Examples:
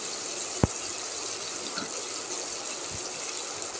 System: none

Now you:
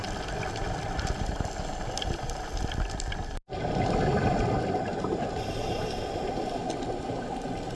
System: none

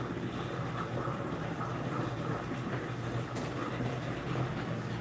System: none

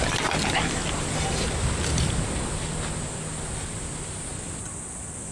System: none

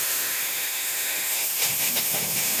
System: autoencoder, DAC-VAE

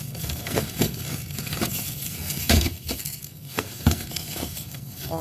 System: codec, SNAC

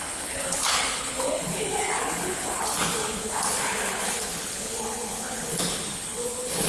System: codec, HILCodec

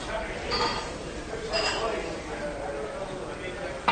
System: none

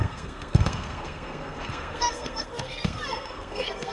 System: codec, SNAC